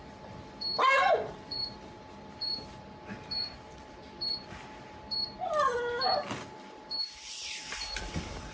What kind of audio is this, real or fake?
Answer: fake